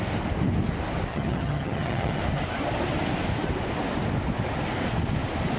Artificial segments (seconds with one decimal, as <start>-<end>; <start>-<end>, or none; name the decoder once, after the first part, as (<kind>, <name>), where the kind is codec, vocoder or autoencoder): 1.1-2.2 (vocoder, HiFi-GAN)